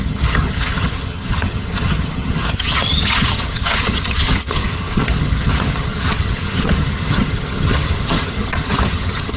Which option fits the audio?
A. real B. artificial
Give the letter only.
B